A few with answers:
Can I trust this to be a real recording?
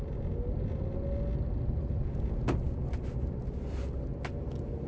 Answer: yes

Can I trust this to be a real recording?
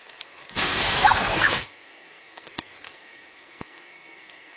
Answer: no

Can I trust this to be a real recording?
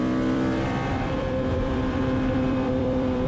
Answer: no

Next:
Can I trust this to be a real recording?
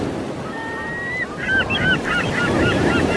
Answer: yes